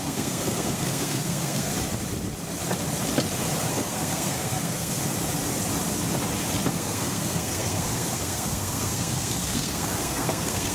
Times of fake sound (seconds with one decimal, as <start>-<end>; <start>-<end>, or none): 0.0-1.7; 3.7-5.0; 6.7-10.7